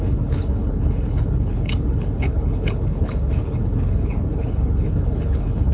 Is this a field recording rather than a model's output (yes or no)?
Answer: no